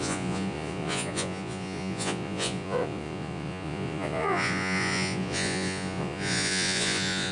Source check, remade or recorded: remade